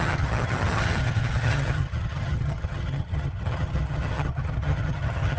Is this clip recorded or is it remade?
remade